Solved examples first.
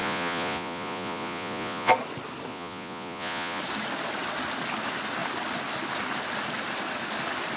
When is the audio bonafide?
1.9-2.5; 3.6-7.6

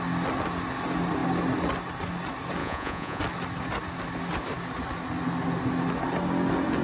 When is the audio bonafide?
0.0-2.6; 3.2-6.8

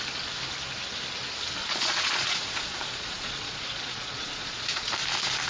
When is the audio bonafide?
0.0-1.6; 4.9-5.5

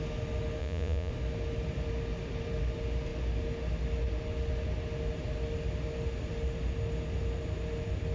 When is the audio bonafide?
0.0-0.6; 1.1-8.1

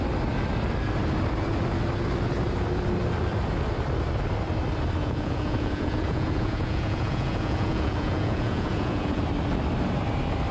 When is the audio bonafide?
0.0-5.0; 9.2-10.5

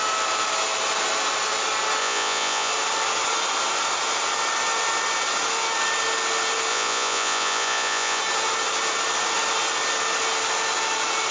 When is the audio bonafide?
0.0-2.0; 2.7-6.7; 8.2-11.3

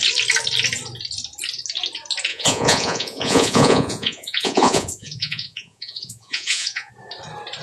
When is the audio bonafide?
0.0-2.3; 6.9-7.6